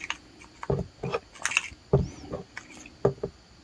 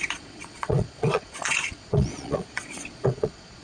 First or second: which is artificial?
second